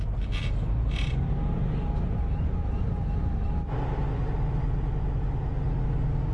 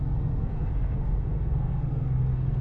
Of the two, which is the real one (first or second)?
first